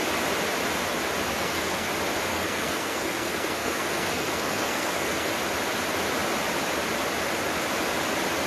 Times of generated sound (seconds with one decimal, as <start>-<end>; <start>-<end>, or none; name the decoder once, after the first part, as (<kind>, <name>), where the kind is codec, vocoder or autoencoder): 1.3-1.9 (codec, SNAC); 2.3-5.3